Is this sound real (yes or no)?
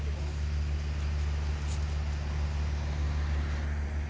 yes